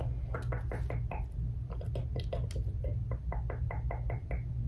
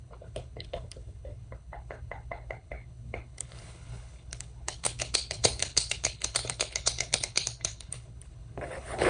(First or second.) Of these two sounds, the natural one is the first